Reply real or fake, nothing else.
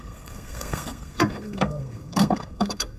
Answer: fake